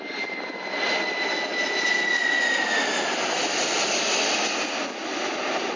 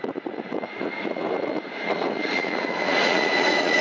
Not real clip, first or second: second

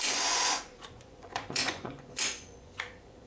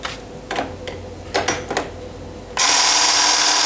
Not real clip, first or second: first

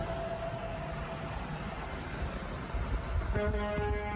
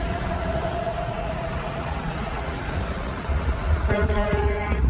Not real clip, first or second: second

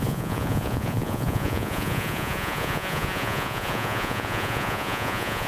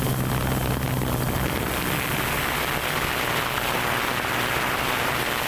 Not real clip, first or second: first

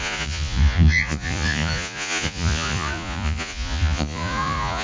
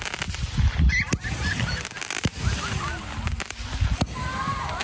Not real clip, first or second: first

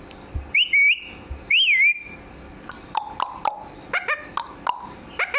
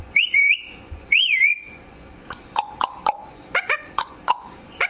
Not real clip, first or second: second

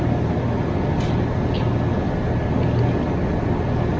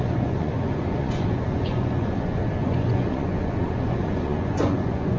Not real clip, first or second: second